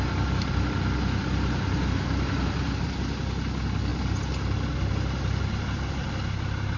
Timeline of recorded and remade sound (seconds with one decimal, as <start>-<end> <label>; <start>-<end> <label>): 0.0-6.8 recorded